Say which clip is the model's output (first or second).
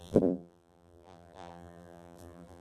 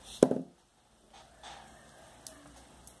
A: first